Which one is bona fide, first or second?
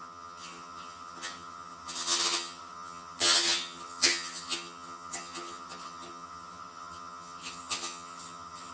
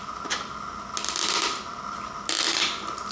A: second